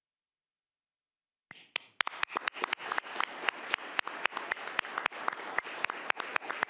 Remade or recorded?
recorded